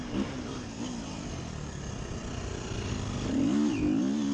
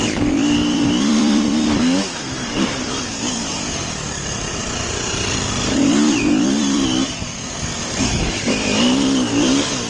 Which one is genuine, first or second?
first